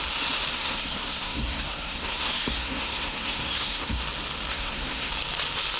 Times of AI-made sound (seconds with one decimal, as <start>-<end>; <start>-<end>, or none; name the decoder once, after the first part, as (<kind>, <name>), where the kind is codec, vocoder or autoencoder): 0.5-4.0 (codec, SNAC); 4.5-5.1